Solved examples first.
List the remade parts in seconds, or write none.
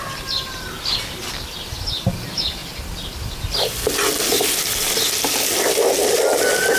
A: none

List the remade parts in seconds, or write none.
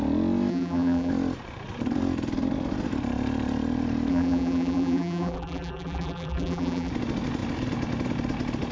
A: 0.5-1.1 (vocoder, BigVGAN v2); 4.1-6.9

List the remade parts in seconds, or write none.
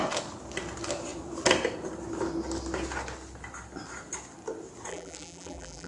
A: 4.9-5.9 (vocoder, BigVGAN v2)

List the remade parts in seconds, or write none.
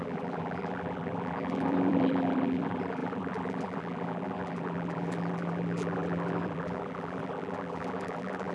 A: 0.0-8.5 (vocoder, BigVGAN v2)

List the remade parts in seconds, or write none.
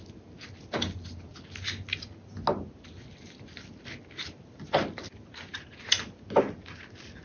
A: none